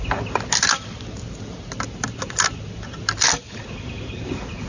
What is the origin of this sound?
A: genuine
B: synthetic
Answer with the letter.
A